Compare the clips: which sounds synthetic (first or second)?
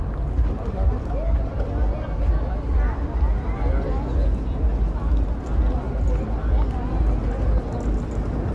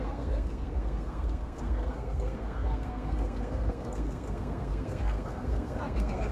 second